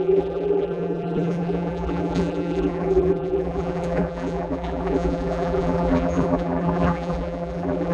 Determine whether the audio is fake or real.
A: fake